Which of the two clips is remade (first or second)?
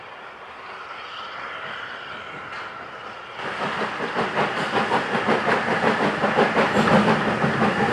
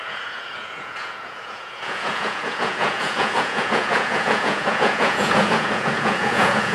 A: second